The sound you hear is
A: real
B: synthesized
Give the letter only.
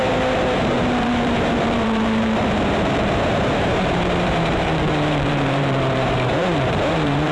B